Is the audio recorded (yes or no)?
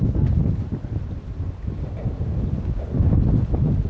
yes